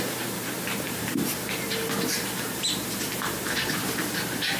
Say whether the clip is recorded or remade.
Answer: remade